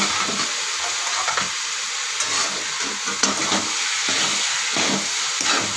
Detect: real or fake real